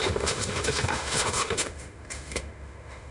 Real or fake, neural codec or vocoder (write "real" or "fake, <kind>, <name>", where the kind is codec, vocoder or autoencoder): fake, autoencoder, DAC-VAE